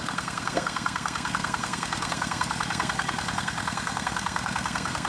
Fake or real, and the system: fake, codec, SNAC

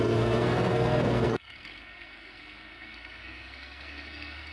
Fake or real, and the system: fake, codec, SNAC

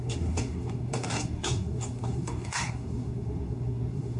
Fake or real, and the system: fake, codec, SNAC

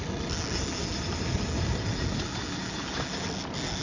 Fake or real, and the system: real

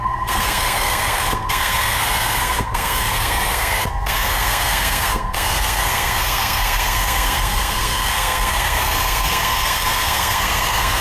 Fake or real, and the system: fake, codec, SNAC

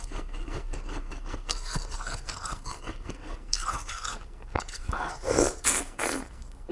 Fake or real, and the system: fake, codec, SNAC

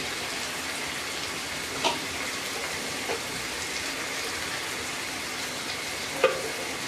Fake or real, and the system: real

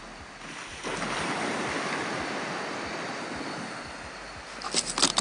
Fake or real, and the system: real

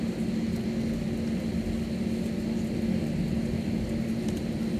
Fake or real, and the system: real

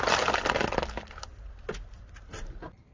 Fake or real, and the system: real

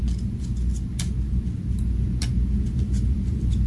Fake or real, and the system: real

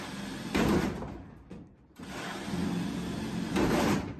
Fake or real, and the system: real